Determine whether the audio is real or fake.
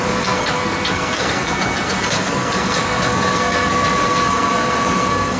fake